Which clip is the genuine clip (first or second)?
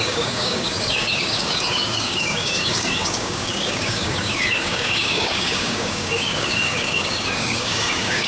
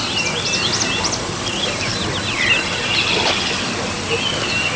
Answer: second